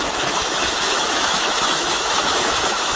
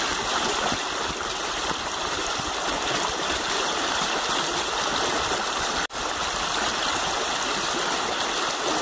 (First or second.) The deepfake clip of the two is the first